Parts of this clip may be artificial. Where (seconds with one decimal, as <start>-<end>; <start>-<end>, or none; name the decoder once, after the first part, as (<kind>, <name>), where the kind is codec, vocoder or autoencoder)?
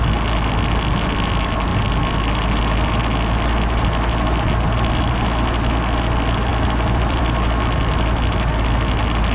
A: 6.5-7.6 (vocoder, BigVGAN v2)